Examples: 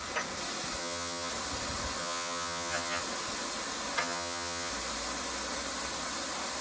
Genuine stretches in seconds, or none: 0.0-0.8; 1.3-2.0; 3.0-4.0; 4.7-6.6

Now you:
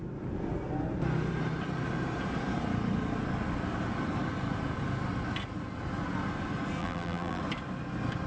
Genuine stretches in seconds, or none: 0.0-6.8; 7.4-8.3

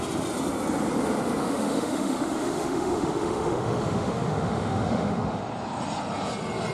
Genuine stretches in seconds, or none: 0.0-1.4; 5.4-6.7

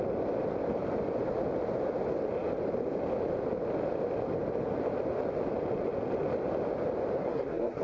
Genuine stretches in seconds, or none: 0.0-7.2

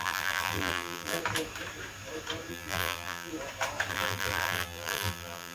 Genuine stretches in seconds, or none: 1.2-2.5; 3.3-3.9

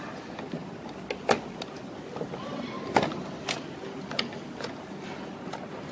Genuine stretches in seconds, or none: 0.0-5.9